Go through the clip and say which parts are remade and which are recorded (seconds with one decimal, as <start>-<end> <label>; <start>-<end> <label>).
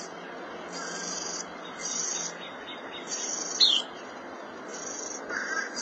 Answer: 0.0-5.8 recorded